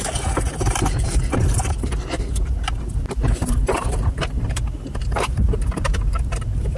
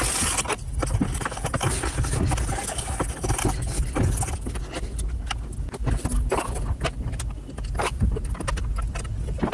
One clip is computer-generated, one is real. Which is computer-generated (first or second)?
first